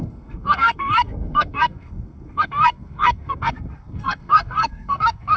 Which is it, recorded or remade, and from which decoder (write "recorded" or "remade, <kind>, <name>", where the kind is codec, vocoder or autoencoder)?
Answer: remade, codec, SNAC